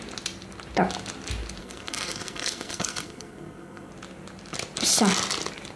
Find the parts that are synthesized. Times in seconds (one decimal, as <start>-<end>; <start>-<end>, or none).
1.6-3.9